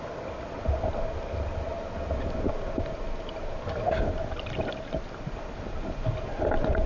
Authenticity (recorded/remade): recorded